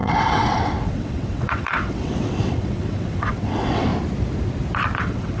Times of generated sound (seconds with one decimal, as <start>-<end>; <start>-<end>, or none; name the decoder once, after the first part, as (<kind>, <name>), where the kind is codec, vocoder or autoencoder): 0.0-3.9 (vocoder, WaveNeXt); 5.0-5.4